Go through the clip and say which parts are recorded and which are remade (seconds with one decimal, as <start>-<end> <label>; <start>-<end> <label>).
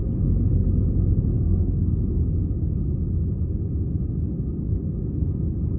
0.0-1.3 recorded; 1.3-2.3 remade; 2.3-5.8 recorded